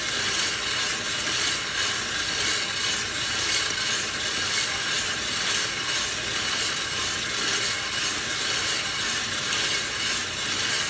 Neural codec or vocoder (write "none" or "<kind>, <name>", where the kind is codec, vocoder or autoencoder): none